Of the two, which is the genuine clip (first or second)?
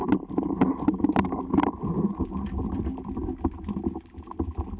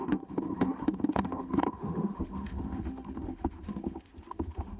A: first